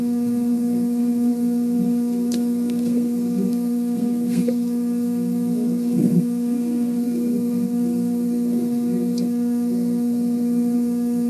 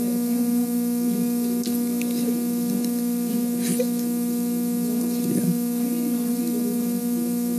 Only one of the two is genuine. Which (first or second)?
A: second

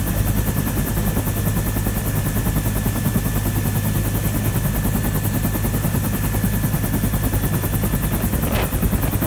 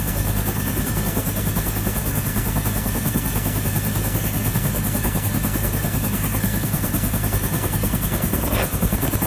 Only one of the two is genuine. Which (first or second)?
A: first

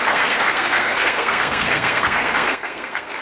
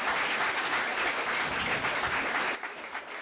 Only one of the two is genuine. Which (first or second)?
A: second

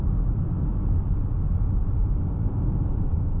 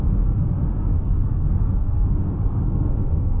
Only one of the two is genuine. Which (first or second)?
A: first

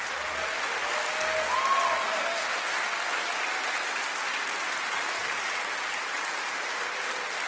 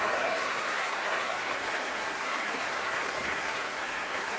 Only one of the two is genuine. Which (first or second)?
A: first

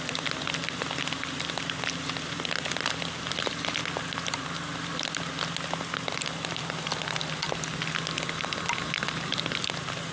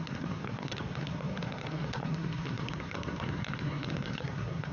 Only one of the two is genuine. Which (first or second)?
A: first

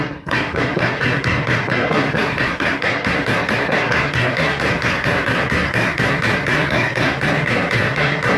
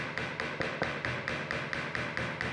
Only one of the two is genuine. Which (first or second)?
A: second